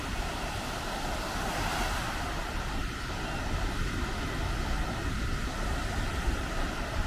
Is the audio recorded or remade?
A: recorded